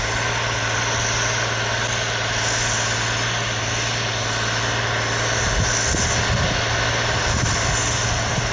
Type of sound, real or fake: real